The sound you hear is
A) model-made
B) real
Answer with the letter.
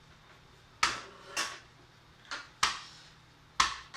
B